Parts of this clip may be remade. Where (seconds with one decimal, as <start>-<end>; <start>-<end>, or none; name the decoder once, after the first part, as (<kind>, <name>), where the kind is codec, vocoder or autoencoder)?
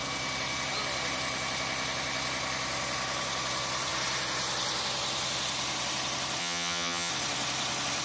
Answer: 6.4-7.1 (vocoder, HiFi-GAN)